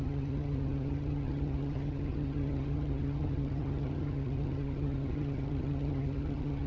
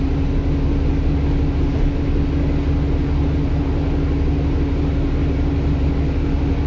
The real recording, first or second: second